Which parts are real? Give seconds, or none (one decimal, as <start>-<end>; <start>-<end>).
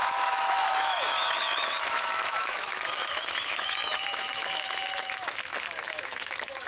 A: none